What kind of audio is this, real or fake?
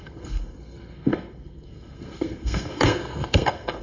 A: fake